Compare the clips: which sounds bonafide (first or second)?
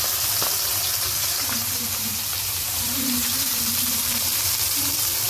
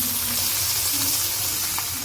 second